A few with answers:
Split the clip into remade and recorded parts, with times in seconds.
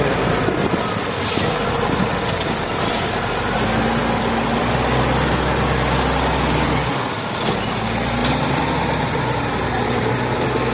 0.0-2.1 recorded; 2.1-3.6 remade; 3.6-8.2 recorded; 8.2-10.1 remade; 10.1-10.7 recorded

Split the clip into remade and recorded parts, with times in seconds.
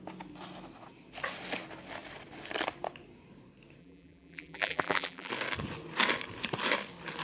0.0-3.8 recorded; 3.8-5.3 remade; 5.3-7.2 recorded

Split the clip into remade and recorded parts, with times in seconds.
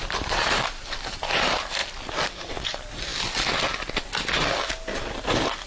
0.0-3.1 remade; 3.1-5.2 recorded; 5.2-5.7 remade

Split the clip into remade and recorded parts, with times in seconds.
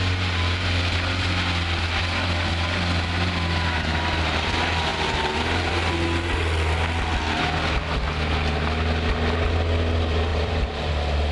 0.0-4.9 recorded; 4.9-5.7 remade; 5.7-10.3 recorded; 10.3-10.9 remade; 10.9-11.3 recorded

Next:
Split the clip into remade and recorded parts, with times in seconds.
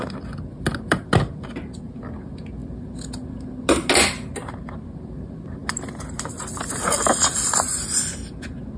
0.0-8.8 recorded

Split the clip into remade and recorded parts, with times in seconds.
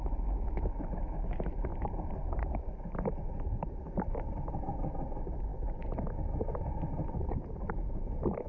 0.0-1.7 recorded; 1.7-4.6 remade; 4.6-8.5 recorded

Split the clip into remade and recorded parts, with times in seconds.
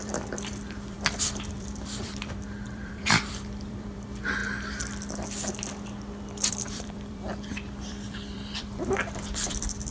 0.0-4.4 remade; 4.4-6.5 recorded; 6.5-9.9 remade